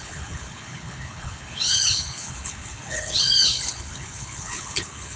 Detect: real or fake fake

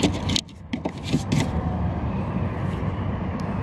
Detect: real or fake real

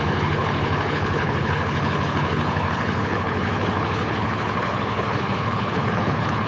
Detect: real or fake fake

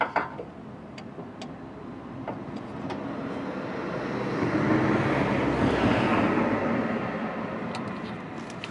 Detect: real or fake real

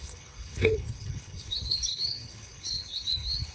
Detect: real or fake fake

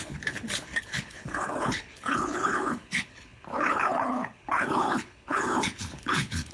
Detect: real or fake fake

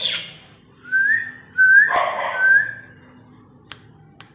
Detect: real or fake real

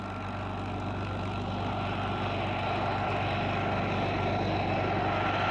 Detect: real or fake real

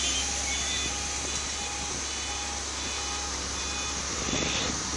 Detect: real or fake real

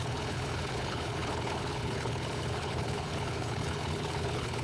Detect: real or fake fake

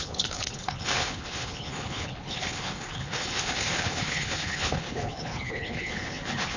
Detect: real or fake fake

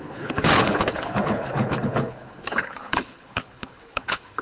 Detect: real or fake fake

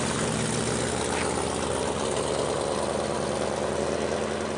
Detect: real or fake real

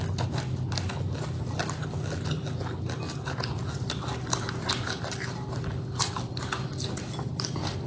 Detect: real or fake real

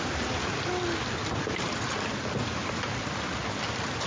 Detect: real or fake real